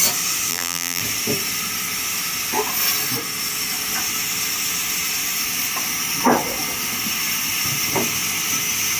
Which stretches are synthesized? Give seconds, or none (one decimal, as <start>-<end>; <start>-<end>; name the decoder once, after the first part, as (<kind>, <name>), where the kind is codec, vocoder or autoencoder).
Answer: 0.5-1.0 (vocoder, BigVGAN v2)